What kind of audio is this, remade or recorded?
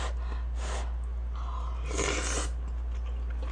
recorded